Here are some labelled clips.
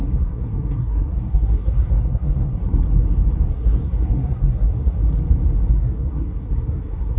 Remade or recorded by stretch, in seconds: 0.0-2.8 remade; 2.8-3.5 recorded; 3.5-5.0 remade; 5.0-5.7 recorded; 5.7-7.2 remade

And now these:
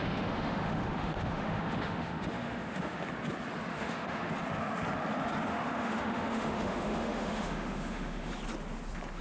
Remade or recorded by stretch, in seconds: 0.0-3.0 remade; 3.0-3.7 recorded; 3.7-4.3 remade; 4.3-5.5 recorded; 5.5-8.3 remade; 8.3-9.2 recorded

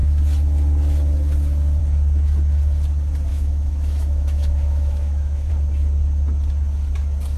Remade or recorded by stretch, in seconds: 0.0-3.3 recorded; 3.3-5.5 remade; 5.5-7.4 recorded

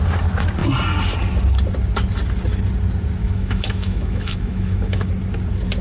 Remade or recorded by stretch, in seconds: 0.0-3.2 recorded; 3.2-5.1 remade; 5.1-5.8 recorded

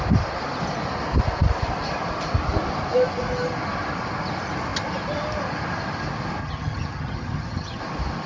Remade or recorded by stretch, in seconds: 0.0-6.4 recorded; 6.4-7.8 remade; 7.8-8.3 recorded

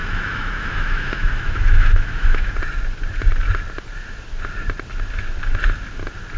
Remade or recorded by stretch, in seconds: 0.0-2.5 remade; 2.5-6.4 recorded